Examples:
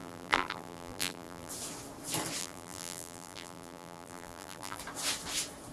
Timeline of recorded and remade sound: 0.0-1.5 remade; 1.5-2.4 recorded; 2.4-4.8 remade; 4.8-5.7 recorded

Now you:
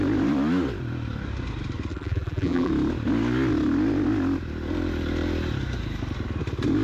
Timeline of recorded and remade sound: 0.0-1.9 recorded; 1.9-2.7 remade; 2.7-6.8 recorded

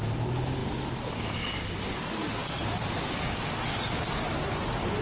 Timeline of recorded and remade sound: 0.0-5.0 recorded

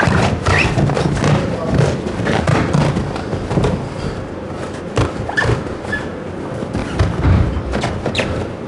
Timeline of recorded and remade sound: 0.0-6.8 remade; 6.8-8.1 recorded; 8.1-8.7 remade